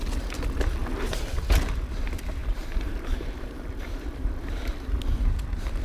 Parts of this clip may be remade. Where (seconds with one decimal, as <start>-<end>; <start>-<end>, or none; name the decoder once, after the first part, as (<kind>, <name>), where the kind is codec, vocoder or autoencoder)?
2.4-5.0 (vocoder, BigVGAN v2)